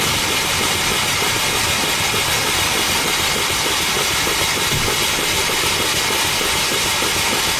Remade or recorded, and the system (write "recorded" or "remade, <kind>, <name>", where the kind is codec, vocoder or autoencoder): recorded